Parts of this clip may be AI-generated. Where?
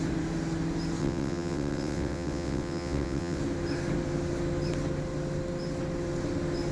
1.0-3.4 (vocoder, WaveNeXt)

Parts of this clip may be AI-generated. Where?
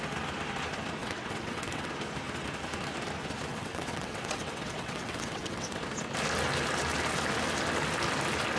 1.0-1.9 (vocoder, WaveNeXt); 3.5-5.8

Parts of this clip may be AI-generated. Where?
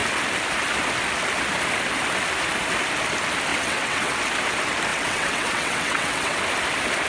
3.5-4.1 (vocoder, WaveNeXt); 4.9-6.4